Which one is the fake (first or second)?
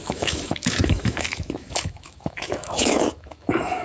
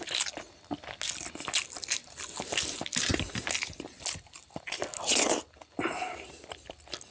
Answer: first